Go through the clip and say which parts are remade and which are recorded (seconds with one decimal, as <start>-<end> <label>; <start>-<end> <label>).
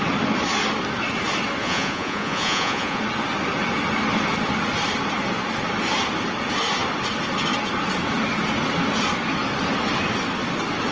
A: 0.0-1.6 recorded; 1.6-3.0 remade; 3.0-10.9 recorded